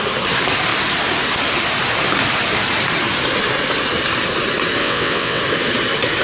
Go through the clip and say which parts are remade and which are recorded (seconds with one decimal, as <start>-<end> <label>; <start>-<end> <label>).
0.0-4.8 recorded; 4.8-5.4 remade; 5.4-6.2 recorded